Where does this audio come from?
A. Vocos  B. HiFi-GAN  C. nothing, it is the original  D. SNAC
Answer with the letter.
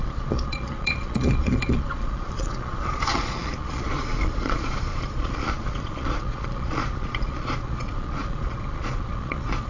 A